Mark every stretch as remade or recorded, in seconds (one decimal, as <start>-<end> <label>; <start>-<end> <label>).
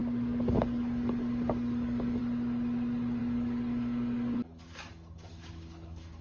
0.0-2.2 remade; 2.2-3.2 recorded; 3.2-6.2 remade